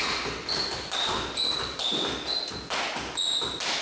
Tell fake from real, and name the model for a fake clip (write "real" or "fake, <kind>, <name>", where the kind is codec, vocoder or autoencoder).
real